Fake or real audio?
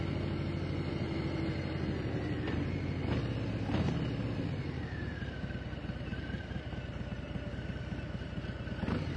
real